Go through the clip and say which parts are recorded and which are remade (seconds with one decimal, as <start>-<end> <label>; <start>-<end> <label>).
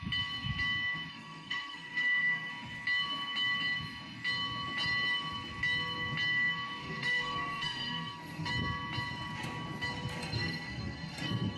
0.0-1.1 recorded; 1.1-2.5 remade; 2.5-6.8 recorded; 6.8-8.5 remade; 8.5-10.2 recorded; 10.2-11.6 remade